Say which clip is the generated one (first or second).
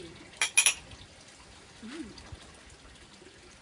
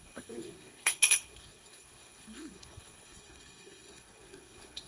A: second